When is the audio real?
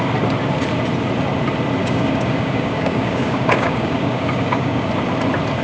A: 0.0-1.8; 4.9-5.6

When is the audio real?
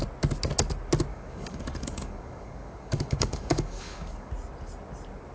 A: 0.0-1.1; 4.3-5.3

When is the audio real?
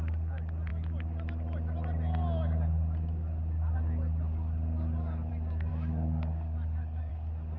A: 0.0-5.7; 7.1-7.6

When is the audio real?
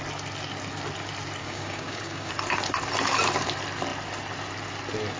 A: 0.0-1.4; 2.3-5.2